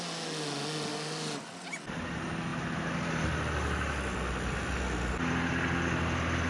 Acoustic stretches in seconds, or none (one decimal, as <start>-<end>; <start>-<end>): 0.0-6.5

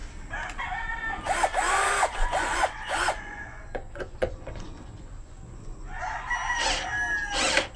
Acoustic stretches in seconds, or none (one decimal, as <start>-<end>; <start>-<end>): 0.0-1.6; 6.3-7.8